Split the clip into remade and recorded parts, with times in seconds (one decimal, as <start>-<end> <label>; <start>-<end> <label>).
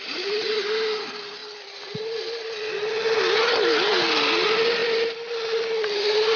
0.0-1.4 recorded; 1.4-2.0 remade; 2.0-6.4 recorded